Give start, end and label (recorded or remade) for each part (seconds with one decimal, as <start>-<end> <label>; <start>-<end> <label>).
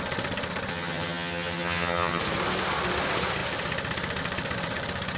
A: 0.0-0.7 recorded; 0.7-2.2 remade; 2.2-5.2 recorded